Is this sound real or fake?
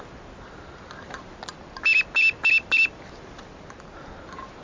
real